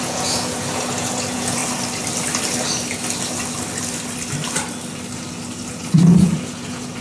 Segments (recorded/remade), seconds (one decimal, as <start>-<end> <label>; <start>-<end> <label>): 0.0-1.6 remade; 1.6-5.7 recorded; 5.7-7.0 remade